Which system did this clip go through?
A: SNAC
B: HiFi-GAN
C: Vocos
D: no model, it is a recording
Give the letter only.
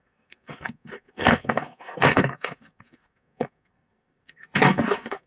A